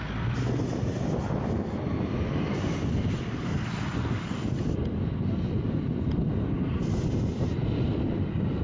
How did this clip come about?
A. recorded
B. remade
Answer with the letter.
A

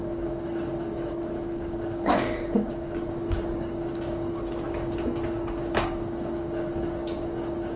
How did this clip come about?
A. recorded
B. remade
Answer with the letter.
B